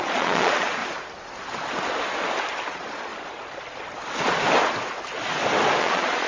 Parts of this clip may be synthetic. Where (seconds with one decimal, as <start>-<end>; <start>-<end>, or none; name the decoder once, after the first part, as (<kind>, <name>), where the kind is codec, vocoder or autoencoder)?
0.0-0.8 (vocoder, Vocos); 2.7-3.1; 5.8-6.3